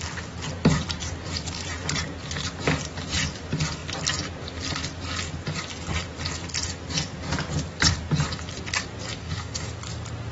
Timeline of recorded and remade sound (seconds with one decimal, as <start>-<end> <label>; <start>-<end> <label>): 0.0-9.2 recorded; 9.2-9.7 remade; 9.7-10.3 recorded